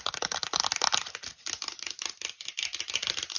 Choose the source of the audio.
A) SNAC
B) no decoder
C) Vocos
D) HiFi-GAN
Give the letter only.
B